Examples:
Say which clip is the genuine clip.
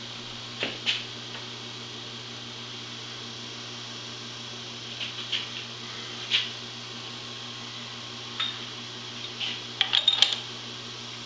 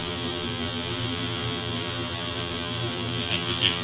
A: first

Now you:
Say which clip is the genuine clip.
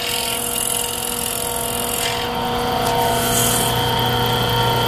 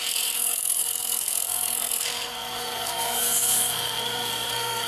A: first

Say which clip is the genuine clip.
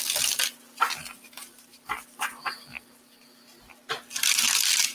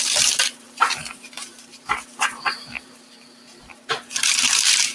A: first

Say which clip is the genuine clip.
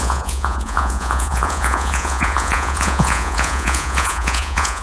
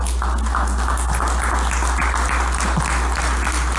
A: second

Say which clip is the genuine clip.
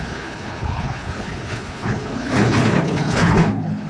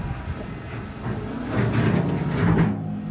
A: second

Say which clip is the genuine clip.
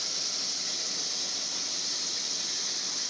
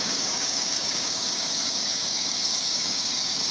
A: first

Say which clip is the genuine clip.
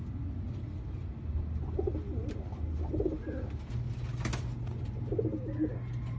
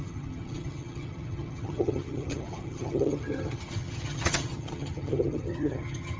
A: first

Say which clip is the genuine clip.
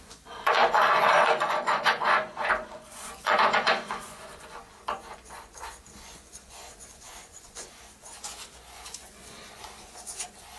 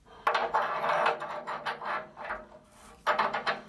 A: second